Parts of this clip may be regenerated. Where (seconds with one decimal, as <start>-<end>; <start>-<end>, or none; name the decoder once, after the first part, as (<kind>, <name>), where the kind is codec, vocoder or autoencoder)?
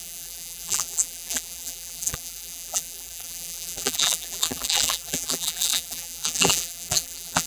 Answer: 0.0-7.5 (vocoder, BigVGAN v2)